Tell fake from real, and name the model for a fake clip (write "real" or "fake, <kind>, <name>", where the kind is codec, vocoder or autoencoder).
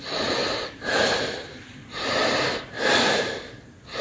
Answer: real